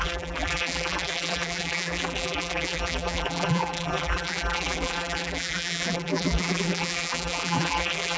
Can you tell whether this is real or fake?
fake